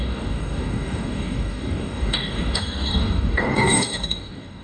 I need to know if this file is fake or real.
fake